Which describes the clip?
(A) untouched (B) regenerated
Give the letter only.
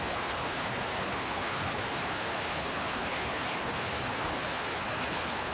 B